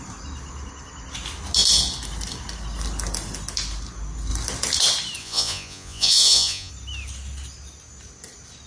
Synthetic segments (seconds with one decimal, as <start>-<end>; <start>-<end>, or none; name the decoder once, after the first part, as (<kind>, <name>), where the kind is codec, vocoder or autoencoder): 5.2-6.7 (vocoder, Vocos)